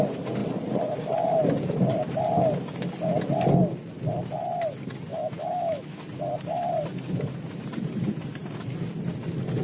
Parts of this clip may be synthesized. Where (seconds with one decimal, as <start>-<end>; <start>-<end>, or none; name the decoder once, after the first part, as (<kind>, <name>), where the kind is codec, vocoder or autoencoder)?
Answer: 5.1-6.0 (autoencoder, DAC-VAE)